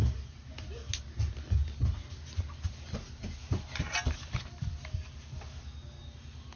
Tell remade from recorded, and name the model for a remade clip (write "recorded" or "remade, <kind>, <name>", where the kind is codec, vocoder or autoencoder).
recorded